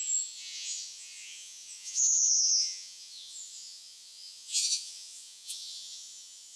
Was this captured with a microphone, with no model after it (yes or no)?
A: no